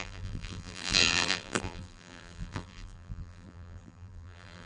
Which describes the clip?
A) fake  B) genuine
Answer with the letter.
A